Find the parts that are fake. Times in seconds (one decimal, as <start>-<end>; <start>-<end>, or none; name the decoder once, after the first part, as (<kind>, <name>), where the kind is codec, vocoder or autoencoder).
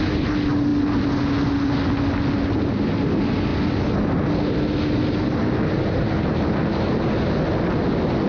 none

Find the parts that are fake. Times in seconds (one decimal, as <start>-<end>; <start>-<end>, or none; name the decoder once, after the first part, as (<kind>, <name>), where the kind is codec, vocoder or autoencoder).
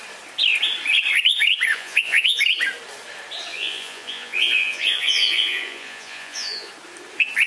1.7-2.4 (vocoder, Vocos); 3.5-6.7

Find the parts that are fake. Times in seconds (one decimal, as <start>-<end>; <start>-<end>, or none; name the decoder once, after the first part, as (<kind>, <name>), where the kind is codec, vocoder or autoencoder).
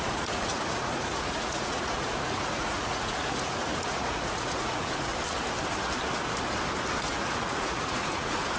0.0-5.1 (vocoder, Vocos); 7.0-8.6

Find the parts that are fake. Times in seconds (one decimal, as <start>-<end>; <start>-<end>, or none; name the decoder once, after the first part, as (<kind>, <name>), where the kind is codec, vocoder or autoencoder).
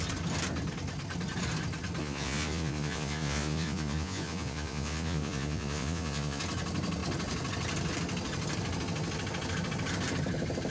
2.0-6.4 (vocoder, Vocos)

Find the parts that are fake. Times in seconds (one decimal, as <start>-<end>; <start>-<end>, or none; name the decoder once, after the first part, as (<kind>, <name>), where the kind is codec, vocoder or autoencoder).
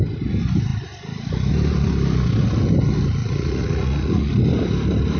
3.2-4.3 (vocoder, Vocos)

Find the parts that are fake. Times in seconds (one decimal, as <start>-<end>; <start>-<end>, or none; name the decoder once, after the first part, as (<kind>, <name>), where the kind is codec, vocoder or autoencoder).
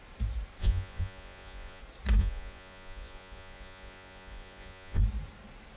0.6-1.8 (vocoder, Vocos); 2.2-5.0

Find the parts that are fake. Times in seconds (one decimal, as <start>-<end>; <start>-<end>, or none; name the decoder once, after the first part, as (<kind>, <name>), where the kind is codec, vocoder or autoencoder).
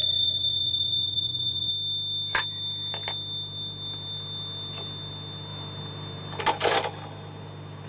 0.0-1.7 (vocoder, Vocos)